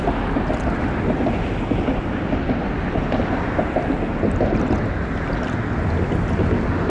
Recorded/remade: recorded